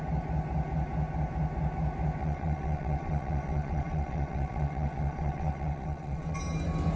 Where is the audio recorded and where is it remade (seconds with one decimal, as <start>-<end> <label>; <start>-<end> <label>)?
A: 0.0-2.2 recorded; 2.2-6.4 remade; 6.4-7.0 recorded